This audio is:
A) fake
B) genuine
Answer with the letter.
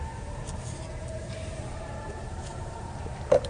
A